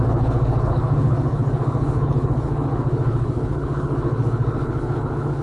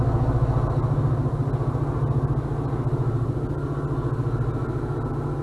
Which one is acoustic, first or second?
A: second